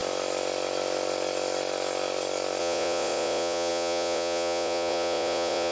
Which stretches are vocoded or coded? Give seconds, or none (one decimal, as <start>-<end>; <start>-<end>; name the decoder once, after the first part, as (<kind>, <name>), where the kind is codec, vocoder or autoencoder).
2.6-5.7 (vocoder, Vocos)